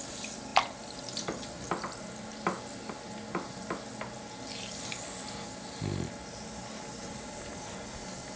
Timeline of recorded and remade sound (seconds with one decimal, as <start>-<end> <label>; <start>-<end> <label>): 0.0-8.4 recorded